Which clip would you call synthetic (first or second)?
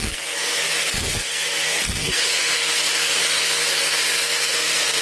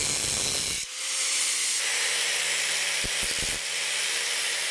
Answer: first